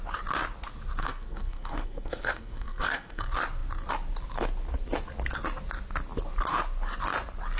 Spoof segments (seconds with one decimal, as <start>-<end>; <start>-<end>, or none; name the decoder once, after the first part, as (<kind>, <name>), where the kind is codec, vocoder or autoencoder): 1.0-3.2 (codec, SNAC)